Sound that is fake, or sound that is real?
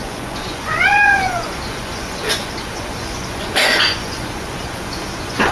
fake